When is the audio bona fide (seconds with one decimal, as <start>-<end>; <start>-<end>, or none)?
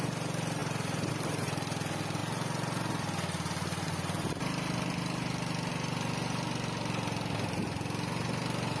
0.0-8.8